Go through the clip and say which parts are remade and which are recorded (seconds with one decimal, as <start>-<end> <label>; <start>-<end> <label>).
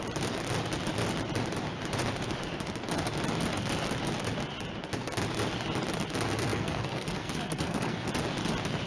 0.0-6.5 recorded; 6.5-8.1 remade; 8.1-8.9 recorded